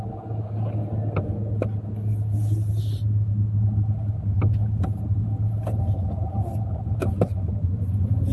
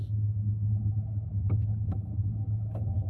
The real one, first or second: first